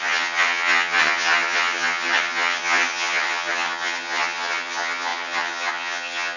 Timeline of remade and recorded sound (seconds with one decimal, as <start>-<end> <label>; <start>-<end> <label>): 0.0-6.4 remade